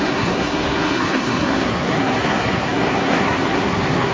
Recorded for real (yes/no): no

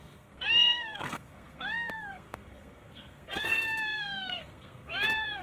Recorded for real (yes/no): no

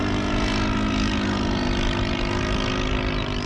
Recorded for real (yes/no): yes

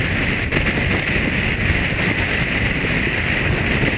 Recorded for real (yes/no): yes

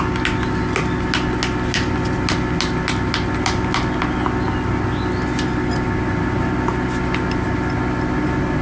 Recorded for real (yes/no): yes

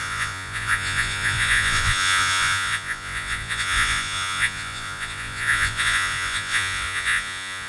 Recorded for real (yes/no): no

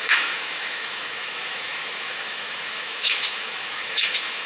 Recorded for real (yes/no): no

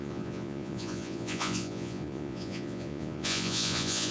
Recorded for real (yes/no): no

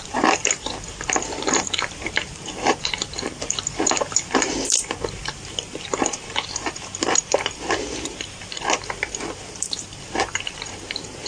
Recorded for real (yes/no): no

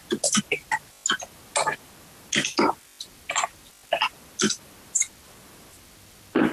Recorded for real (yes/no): yes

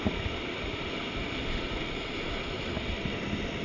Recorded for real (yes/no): yes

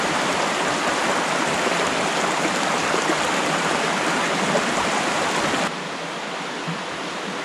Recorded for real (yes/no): yes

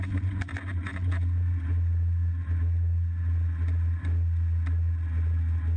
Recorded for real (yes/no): yes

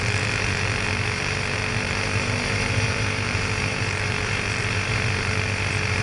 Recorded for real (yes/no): no